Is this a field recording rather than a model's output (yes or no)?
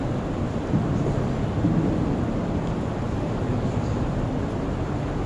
yes